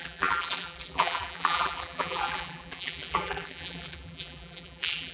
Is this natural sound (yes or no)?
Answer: no